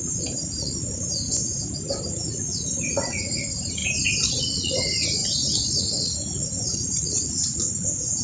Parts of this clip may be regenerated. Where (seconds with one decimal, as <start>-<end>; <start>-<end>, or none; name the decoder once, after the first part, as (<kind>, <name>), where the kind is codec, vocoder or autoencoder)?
0.0-1.4 (vocoder, Vocos); 2.1-3.8; 4.4-5.2; 5.8-8.2